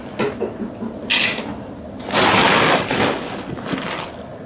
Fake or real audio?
real